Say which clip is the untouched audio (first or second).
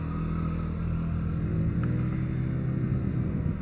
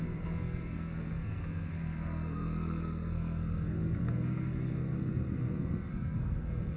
first